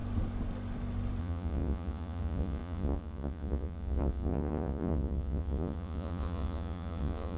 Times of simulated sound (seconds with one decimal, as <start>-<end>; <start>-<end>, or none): 1.2-7.4